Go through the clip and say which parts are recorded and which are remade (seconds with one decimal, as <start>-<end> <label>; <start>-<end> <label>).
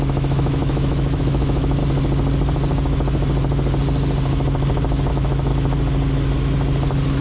0.0-1.8 remade; 1.8-5.1 recorded; 5.1-5.5 remade; 5.5-7.2 recorded